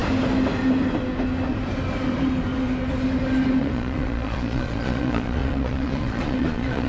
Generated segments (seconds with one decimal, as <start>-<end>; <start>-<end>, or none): 3.6-6.9